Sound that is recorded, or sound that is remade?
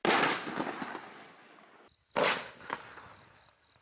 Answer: recorded